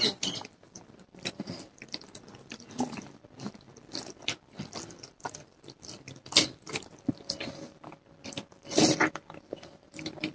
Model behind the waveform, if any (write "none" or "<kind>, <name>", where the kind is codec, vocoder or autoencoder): vocoder, BigVGAN v2